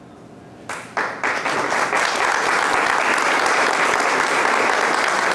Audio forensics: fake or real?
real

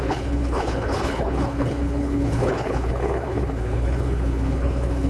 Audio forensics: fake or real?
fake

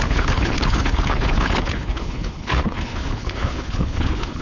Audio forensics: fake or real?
fake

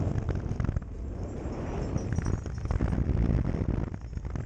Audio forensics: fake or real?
real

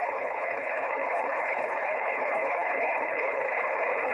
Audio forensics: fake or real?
fake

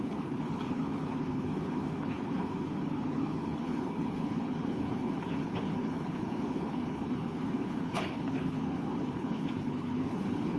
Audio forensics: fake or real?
fake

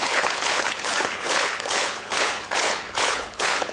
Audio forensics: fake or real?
fake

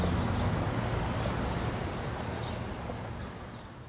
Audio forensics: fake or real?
real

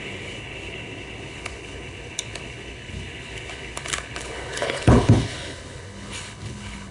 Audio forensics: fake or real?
fake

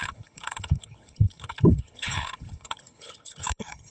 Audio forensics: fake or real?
fake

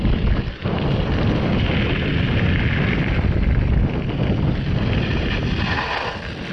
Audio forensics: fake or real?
real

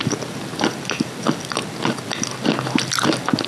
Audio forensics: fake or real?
real